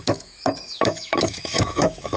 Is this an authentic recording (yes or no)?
no